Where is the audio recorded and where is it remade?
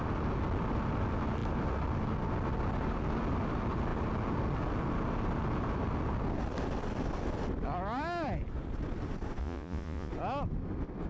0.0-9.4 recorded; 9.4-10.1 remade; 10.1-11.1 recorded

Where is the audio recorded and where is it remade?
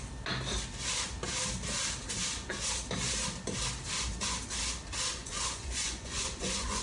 0.0-5.1 recorded; 5.1-6.8 remade